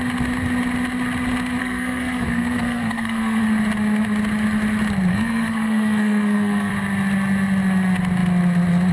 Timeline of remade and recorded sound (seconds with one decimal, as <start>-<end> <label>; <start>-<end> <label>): 0.0-1.6 recorded; 1.6-3.4 remade; 3.4-5.1 recorded; 5.1-6.7 remade; 6.7-8.9 recorded